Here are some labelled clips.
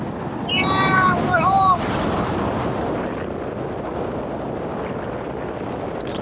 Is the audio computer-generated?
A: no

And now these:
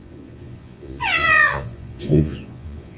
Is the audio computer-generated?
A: yes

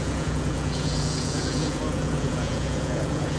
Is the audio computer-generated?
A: yes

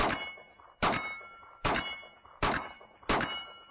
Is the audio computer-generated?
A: no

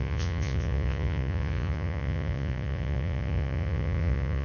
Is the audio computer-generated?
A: yes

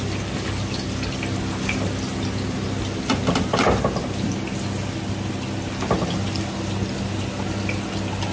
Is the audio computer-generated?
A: no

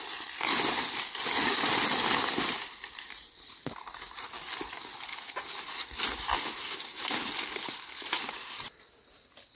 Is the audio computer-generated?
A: no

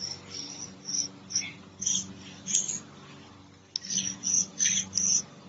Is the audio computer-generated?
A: no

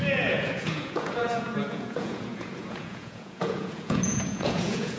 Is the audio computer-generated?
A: yes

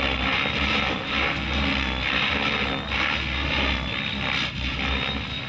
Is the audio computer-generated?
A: no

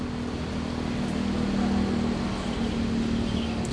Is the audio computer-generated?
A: no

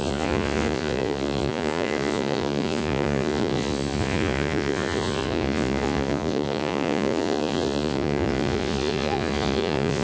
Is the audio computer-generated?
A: yes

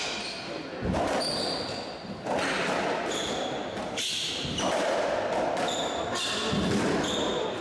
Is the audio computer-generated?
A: no